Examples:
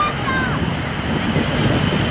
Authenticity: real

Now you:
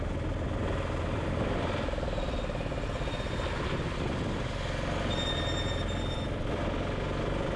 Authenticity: real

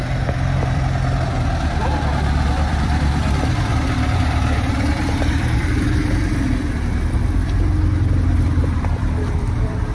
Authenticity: fake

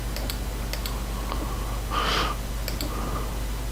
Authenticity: real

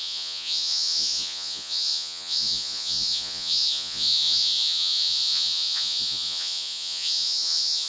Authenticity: fake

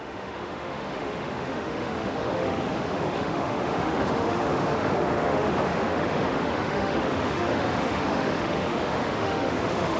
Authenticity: fake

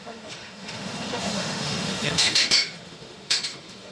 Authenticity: fake